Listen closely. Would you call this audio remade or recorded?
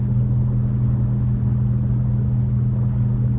recorded